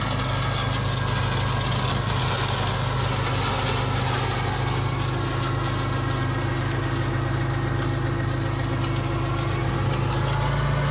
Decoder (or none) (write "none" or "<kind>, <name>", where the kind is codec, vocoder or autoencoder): none